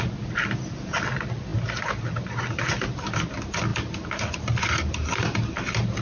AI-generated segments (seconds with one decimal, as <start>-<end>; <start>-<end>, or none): none